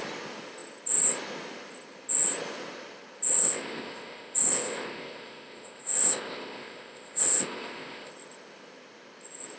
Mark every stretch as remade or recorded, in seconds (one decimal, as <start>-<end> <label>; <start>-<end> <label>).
0.0-3.4 recorded; 3.4-8.1 remade; 8.1-9.6 recorded